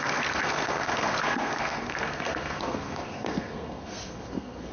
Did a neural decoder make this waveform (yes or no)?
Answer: yes